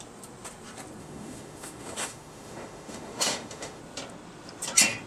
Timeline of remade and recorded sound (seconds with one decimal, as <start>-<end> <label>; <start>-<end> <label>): 0.0-1.0 recorded; 1.0-3.8 remade; 3.8-5.1 recorded